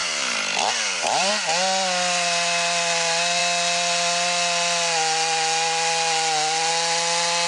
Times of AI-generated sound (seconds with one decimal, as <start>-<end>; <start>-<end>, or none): 0.0-1.3